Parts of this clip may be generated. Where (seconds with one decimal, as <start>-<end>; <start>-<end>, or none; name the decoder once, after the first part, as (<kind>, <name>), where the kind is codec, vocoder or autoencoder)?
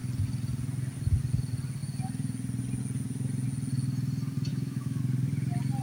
4.5-5.0 (autoencoder, DAC-VAE)